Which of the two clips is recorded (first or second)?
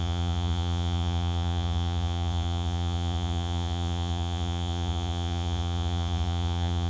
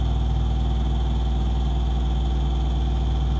second